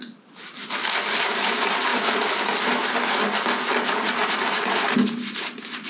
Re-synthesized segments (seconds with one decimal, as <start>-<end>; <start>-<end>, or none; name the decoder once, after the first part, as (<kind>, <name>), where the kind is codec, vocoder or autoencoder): 0.0-0.6 (vocoder, BigVGAN v2); 1.2-1.9; 3.9-5.9